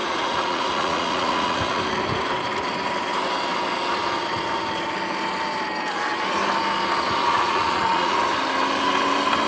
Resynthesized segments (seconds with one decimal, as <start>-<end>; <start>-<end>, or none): 0.0-1.8; 7.2-8.2